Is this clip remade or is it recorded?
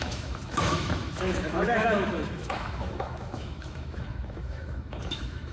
remade